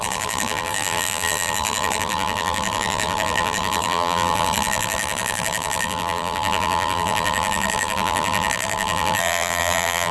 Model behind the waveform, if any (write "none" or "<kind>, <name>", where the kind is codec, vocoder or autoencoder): vocoder, BigVGAN v2